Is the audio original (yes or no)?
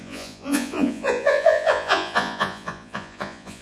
no